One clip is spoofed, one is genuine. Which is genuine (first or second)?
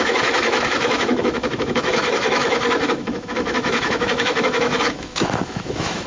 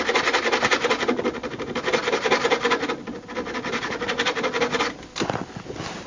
second